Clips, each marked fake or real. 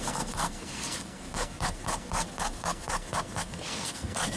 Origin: fake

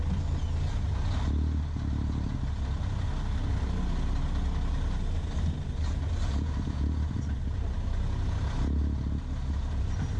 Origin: real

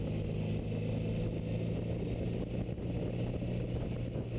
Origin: real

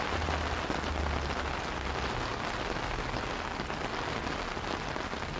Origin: real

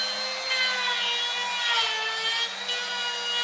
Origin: real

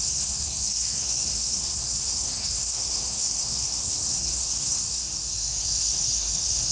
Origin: fake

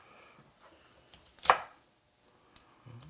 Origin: real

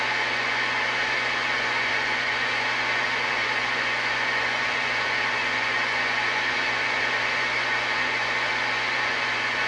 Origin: fake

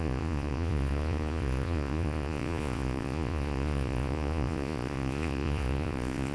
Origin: fake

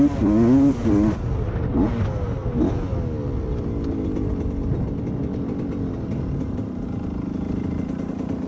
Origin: real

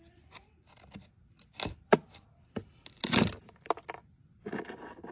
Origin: real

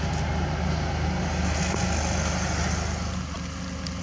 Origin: real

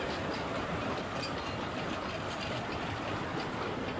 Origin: real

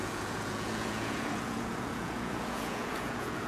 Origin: fake